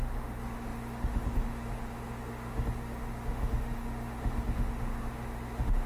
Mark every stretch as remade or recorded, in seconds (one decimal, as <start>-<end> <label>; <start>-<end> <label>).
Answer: 0.0-5.9 remade